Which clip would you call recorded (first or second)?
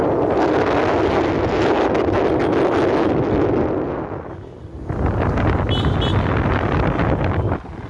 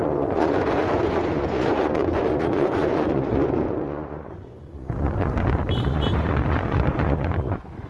first